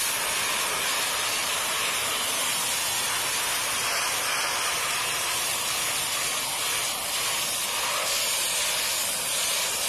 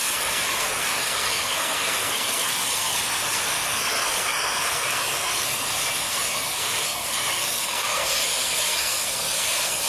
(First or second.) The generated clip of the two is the second